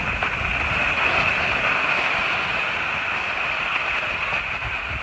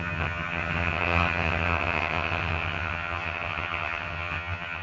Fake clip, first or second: second